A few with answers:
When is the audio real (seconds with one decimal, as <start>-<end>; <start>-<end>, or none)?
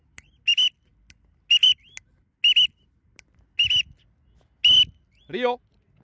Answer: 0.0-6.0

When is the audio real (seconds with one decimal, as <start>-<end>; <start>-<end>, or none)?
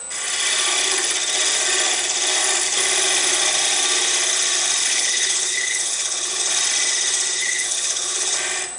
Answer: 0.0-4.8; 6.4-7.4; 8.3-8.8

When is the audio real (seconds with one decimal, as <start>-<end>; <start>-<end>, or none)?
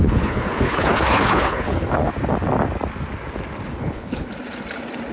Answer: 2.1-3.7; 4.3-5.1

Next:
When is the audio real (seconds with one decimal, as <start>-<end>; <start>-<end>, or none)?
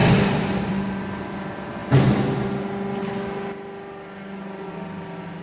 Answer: 0.0-5.4